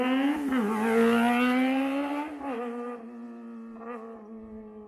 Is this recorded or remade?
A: recorded